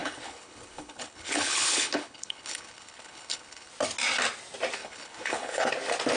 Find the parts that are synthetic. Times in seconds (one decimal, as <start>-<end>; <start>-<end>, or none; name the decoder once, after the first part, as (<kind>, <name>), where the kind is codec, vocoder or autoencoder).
0.0-3.7 (codec, HILCodec); 4.8-5.7